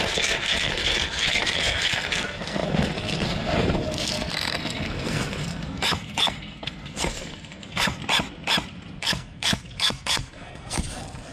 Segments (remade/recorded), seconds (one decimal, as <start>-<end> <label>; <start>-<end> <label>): 0.0-8.0 remade; 8.0-9.0 recorded; 9.0-11.3 remade